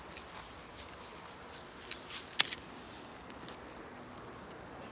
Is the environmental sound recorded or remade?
recorded